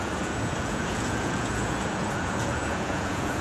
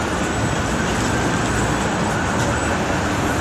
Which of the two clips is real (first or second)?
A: second